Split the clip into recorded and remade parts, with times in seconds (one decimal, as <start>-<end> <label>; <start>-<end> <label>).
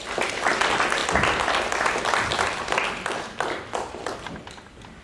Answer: 0.0-5.0 recorded